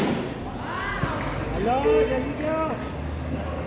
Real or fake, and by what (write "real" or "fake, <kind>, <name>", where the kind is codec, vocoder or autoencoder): real